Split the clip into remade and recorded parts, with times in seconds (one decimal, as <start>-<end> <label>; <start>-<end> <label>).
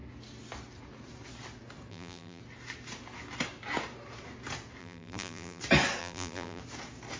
0.0-1.9 recorded; 1.9-2.4 remade; 2.4-4.8 recorded; 4.8-5.6 remade; 5.6-6.0 recorded; 6.0-6.6 remade; 6.6-7.2 recorded